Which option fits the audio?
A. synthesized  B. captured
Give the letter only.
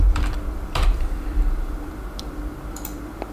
A